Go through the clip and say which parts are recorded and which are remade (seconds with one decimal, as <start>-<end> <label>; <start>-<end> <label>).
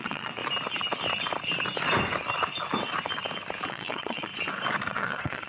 0.0-0.4 remade; 0.4-3.7 recorded; 3.7-4.3 remade; 4.3-4.9 recorded; 4.9-5.5 remade